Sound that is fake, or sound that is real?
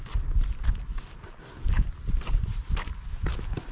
real